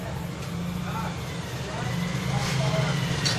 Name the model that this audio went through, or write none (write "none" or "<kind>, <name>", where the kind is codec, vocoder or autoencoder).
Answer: none